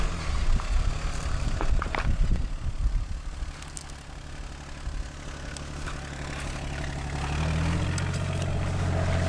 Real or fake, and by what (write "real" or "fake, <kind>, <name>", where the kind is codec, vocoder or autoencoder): real